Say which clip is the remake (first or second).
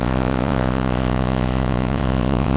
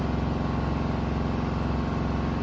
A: first